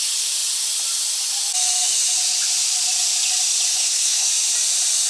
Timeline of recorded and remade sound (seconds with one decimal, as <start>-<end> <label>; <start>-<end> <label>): 0.0-3.7 recorded; 3.7-4.3 remade; 4.3-5.1 recorded